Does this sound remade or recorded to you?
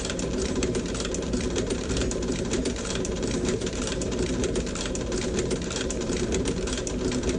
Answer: remade